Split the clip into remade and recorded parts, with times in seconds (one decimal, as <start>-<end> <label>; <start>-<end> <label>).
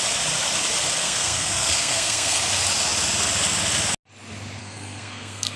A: 0.0-1.0 recorded; 1.0-2.4 remade; 2.4-4.6 recorded; 4.6-5.6 remade